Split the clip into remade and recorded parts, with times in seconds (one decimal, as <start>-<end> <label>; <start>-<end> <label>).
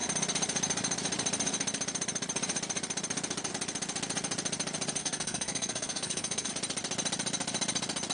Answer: 0.0-5.0 recorded; 5.0-6.5 remade; 6.5-8.1 recorded